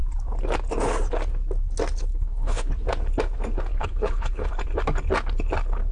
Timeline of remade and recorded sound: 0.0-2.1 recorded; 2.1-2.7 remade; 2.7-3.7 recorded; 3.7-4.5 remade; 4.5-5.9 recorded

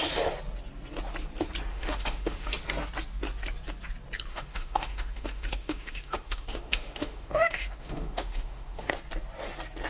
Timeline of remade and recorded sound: 0.0-1.7 recorded; 1.7-2.6 remade; 2.6-4.3 recorded; 4.3-8.9 remade; 8.9-9.9 recorded

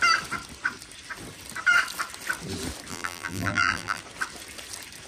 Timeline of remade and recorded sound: 0.0-2.9 recorded; 2.9-4.0 remade; 4.0-5.1 recorded

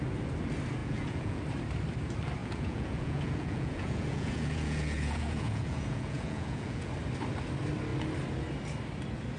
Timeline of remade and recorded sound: 0.0-0.8 recorded; 0.8-1.4 remade; 1.4-2.4 recorded; 2.4-6.9 remade; 6.9-9.4 recorded

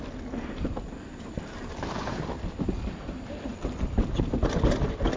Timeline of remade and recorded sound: 0.0-1.1 recorded; 1.1-2.2 remade; 2.2-3.5 recorded; 3.5-4.3 remade; 4.3-5.2 recorded

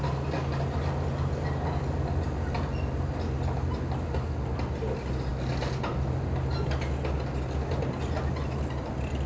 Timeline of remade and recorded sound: 0.0-9.3 recorded

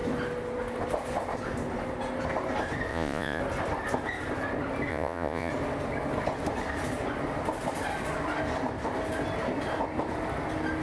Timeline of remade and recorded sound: 0.0-2.9 recorded; 2.9-3.4 remade; 3.4-4.9 recorded; 4.9-5.5 remade; 5.5-10.8 recorded

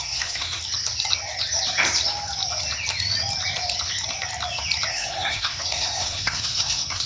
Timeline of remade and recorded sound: 0.0-0.6 remade; 0.6-4.9 recorded; 4.9-7.1 remade